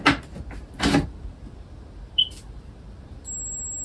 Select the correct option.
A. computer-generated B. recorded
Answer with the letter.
B